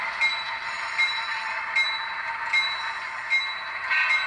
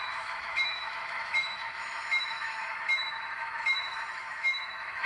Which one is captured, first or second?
first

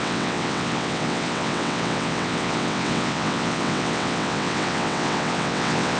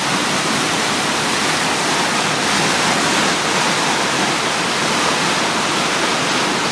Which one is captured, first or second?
second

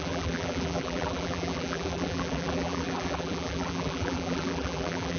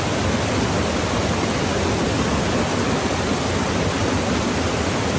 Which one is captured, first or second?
second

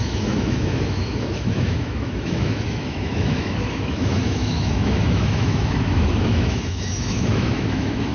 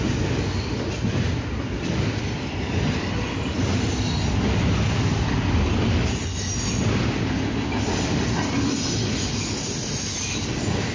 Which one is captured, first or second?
second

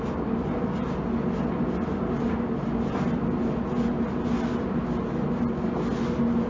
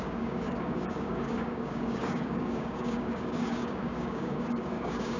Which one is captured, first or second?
first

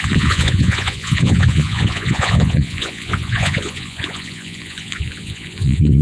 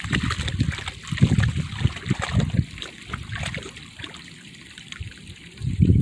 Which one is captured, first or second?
second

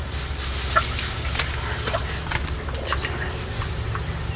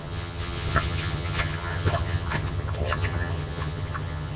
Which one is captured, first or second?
first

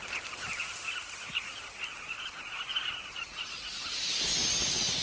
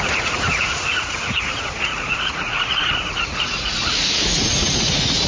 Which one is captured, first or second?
first